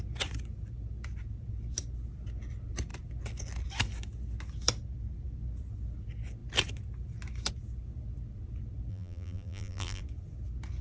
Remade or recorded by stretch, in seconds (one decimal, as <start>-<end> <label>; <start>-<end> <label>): 0.0-8.9 recorded; 8.9-10.0 remade; 10.0-10.8 recorded